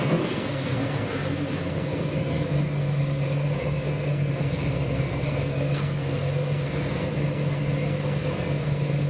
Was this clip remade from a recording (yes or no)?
yes